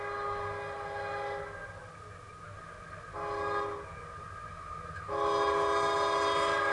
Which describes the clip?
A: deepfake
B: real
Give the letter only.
B